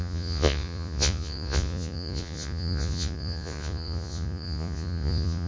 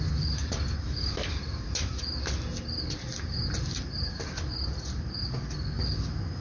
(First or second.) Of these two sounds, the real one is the second